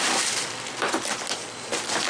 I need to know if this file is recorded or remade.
recorded